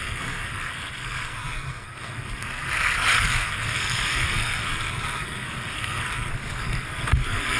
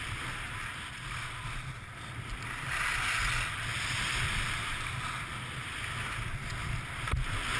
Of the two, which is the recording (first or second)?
second